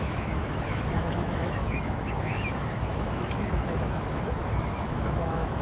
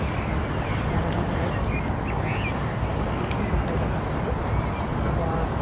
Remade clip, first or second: first